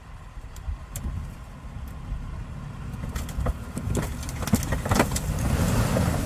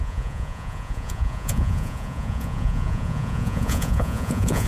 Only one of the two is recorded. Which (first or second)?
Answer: first